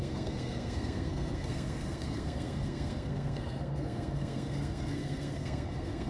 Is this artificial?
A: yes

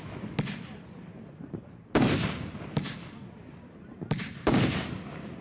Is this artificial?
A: no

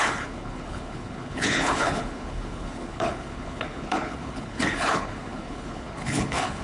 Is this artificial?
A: yes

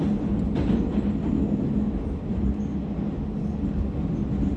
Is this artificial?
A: no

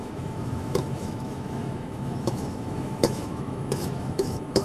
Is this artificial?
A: yes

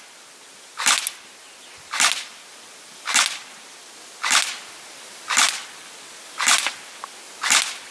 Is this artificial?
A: no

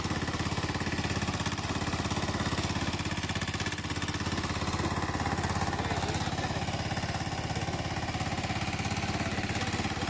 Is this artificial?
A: no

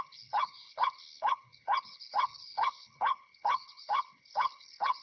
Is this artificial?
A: yes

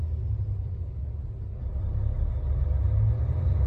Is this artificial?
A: no